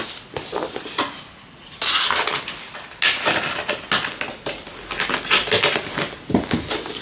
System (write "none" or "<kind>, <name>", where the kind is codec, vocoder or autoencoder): none